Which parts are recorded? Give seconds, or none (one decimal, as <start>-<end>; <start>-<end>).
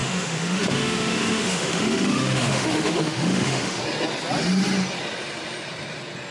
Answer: 3.8-6.3